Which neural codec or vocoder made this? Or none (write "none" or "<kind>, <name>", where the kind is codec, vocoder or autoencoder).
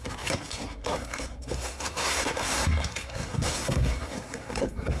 codec, SNAC